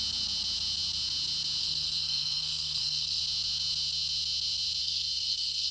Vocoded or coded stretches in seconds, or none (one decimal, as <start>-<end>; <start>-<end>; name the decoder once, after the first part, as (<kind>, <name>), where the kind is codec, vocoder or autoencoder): 1.6-3.2 (codec, SNAC); 4.8-5.7

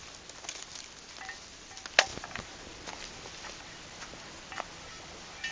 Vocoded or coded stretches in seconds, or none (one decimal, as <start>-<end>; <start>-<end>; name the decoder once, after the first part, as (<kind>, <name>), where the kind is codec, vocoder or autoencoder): none

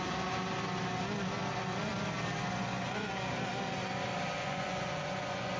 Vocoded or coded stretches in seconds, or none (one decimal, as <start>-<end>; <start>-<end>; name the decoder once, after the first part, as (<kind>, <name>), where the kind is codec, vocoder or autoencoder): 4.4-5.6 (vocoder, Vocos)

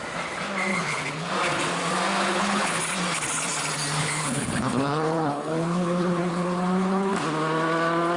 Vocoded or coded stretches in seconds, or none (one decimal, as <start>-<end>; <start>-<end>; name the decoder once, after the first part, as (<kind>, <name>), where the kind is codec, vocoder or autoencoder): 0.7-1.3 (codec, HILCodec); 2.2-2.8; 4.0-7.1

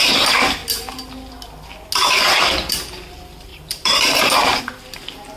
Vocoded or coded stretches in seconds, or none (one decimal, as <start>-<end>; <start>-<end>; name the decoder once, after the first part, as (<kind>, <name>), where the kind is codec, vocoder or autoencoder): 3.5-4.6 (vocoder, BigVGAN v2)